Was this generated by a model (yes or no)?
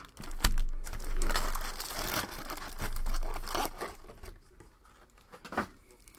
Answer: no